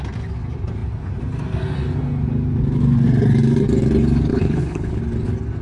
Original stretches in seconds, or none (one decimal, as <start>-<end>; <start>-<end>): 0.0-4.3; 5.0-5.6